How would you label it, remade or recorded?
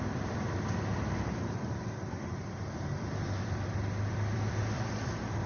remade